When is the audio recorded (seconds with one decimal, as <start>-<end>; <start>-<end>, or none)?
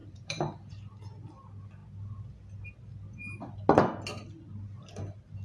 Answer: 0.7-5.4